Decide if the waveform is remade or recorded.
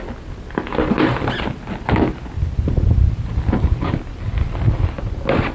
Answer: recorded